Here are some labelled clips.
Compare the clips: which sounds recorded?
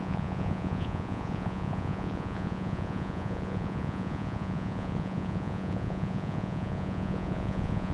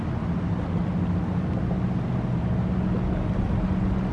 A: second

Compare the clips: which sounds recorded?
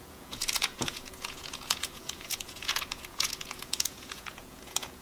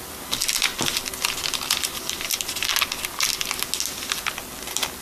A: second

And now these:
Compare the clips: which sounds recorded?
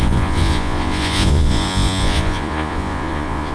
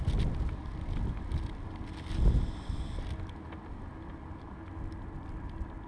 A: second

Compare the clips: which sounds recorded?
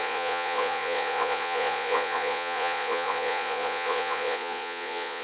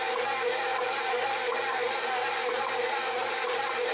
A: second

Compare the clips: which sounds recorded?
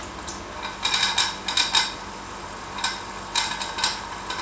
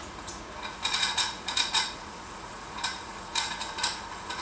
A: first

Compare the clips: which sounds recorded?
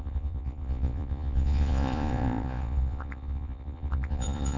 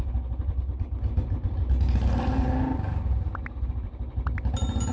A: second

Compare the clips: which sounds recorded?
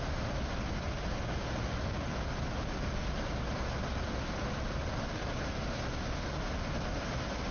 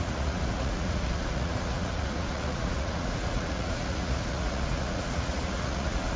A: first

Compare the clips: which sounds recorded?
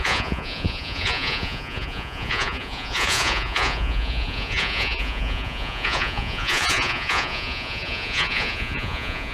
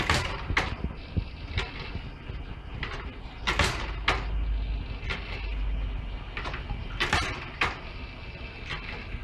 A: second